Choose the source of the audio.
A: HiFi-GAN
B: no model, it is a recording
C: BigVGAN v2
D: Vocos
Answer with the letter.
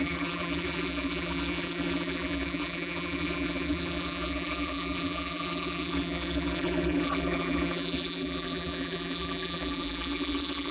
C